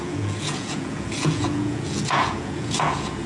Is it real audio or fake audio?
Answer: fake